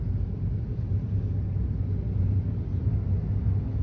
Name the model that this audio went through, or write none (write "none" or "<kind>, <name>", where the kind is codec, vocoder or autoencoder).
none